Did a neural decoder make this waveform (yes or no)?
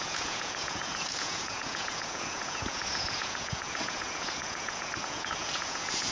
yes